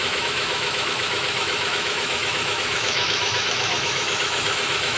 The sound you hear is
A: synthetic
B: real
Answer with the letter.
A